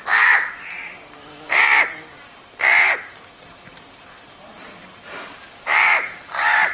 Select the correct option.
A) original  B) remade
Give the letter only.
B